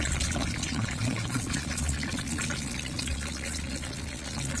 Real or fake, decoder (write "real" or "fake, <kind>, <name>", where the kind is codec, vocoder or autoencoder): fake, vocoder, Vocos